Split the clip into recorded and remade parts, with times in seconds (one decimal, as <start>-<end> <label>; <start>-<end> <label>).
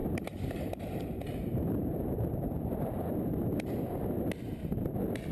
0.0-3.2 remade; 3.2-5.3 recorded